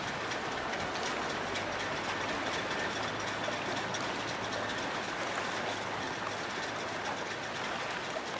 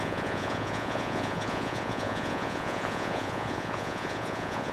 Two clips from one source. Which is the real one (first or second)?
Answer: first